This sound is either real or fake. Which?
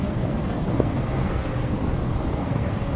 fake